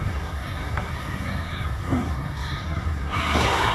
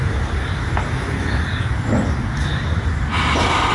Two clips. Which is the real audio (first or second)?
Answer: second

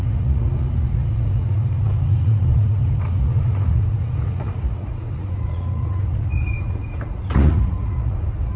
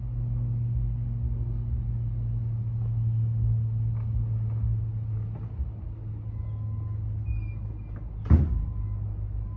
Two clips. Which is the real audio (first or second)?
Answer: second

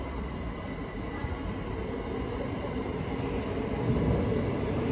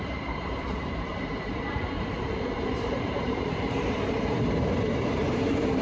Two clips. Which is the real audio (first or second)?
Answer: first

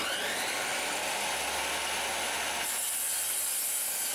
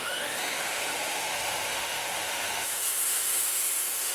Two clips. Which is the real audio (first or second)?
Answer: first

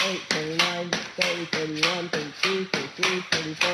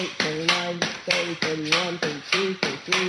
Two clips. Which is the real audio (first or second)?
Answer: first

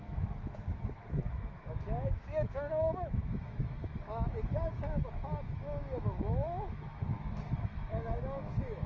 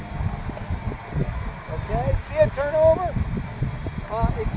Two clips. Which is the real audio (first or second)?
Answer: second